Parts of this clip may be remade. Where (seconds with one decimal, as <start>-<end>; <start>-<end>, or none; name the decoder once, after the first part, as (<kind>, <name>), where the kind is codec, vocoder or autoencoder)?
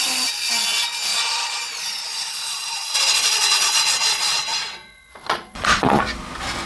1.1-1.6 (vocoder, Vocos); 2.0-6.0